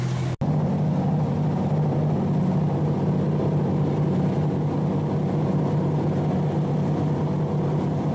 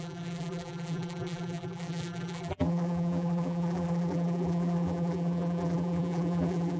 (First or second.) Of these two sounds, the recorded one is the first